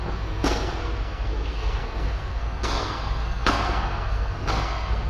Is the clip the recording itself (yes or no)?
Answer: no